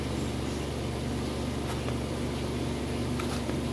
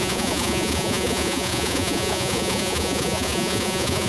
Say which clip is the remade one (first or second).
second